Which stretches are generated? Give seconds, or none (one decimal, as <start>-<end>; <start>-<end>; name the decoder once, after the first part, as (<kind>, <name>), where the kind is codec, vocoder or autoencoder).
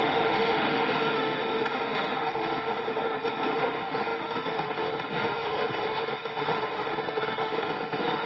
0.0-8.3 (autoencoder, DAC-VAE)